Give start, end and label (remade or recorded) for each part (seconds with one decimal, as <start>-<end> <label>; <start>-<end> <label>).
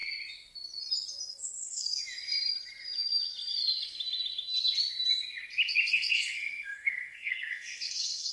0.0-1.3 recorded; 1.3-2.0 remade; 2.0-5.9 recorded; 5.9-8.3 remade